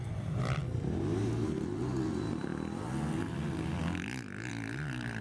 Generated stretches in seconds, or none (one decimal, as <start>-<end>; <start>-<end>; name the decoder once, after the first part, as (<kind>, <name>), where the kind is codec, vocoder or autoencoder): 0.0-0.6 (vocoder, BigVGAN v2); 1.2-2.5; 4.5-5.2